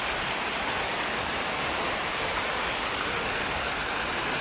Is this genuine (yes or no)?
yes